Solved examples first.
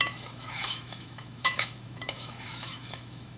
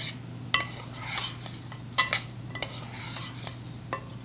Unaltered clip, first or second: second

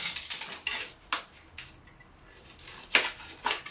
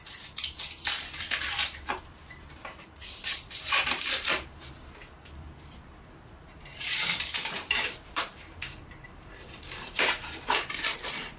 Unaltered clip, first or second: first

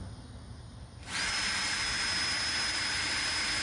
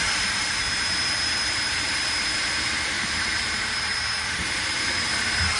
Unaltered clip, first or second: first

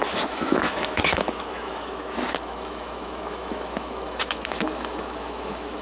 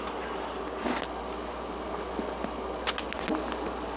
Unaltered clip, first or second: second